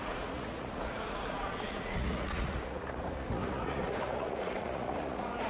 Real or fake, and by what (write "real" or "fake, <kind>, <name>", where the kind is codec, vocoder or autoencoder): fake, vocoder, Vocos